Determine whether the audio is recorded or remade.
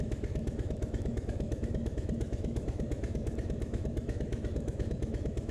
remade